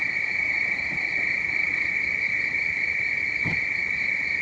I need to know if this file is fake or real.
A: real